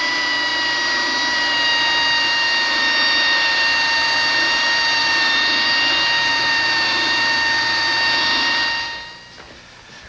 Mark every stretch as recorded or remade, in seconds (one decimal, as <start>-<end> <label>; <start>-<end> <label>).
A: 0.0-10.1 recorded